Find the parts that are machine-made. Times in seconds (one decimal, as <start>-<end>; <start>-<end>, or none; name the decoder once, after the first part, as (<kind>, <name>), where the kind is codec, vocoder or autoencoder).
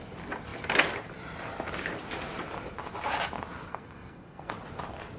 3.7-4.5 (codec, SNAC)